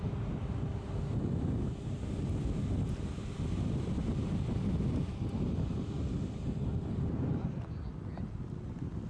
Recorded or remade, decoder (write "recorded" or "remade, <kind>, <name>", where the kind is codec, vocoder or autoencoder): recorded